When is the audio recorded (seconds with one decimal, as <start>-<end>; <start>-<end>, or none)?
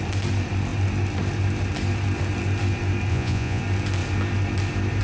0.0-3.1; 3.6-5.0